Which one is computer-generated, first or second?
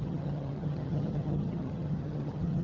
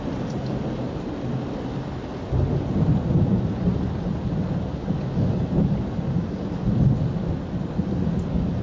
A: first